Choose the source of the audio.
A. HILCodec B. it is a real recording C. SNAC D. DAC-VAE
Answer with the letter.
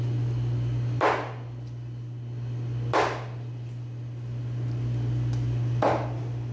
B